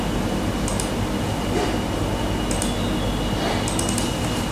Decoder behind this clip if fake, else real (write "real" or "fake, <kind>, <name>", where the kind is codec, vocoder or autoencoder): real